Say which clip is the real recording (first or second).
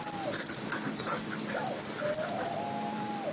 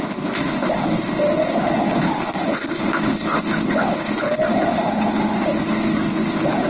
first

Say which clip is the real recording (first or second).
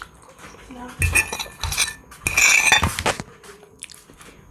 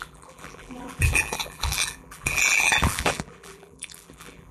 first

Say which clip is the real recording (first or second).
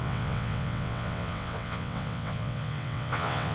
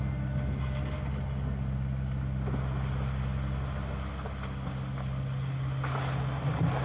second